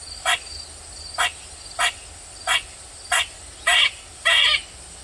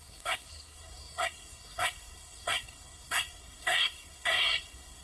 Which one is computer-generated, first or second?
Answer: second